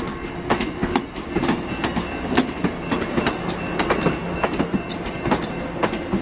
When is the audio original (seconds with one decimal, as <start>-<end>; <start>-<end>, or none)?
0.0-6.2